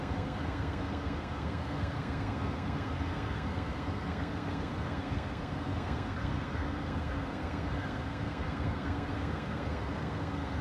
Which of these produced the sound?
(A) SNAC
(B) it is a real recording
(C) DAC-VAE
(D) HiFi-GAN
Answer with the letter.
A